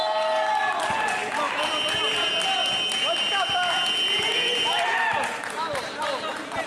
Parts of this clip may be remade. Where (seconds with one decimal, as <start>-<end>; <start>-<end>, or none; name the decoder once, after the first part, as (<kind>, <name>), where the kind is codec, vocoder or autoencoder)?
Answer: none